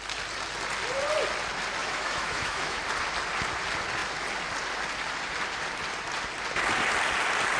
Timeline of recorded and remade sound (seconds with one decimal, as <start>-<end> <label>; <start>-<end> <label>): 0.0-1.8 recorded; 1.8-2.8 remade; 2.8-7.6 recorded

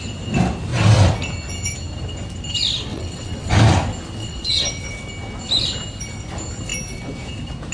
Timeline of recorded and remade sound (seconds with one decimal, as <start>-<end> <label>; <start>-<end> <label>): 0.0-2.9 recorded; 2.9-3.5 remade; 3.5-4.2 recorded; 4.2-4.9 remade; 4.9-7.7 recorded

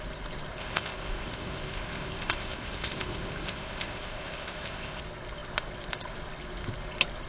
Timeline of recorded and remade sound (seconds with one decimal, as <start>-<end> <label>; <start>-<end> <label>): 0.0-0.6 recorded; 0.6-5.0 remade; 5.0-7.3 recorded

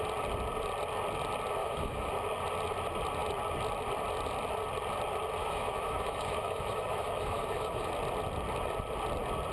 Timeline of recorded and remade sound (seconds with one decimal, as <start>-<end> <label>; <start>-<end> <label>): 0.0-1.6 recorded; 1.6-2.1 remade; 2.1-5.4 recorded; 5.4-7.9 remade; 7.9-9.5 recorded